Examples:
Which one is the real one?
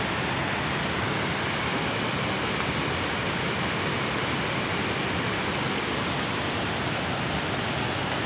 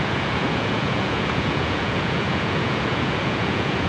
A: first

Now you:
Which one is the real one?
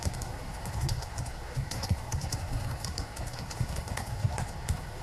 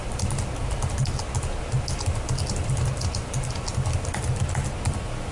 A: second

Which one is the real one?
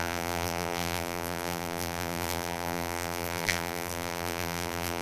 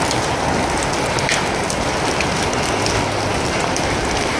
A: second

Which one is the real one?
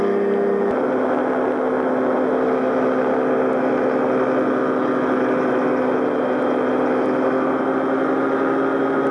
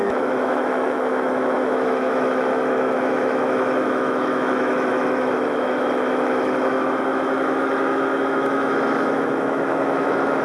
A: first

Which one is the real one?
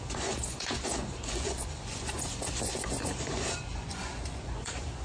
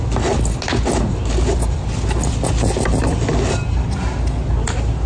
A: second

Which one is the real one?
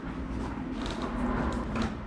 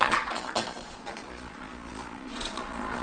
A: first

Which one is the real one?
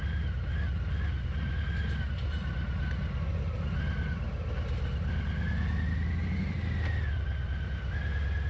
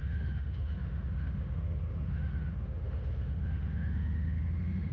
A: first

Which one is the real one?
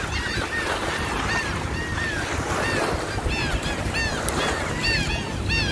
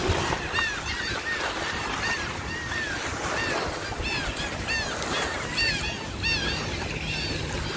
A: first